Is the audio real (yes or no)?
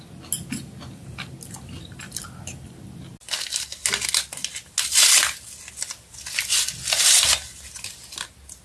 yes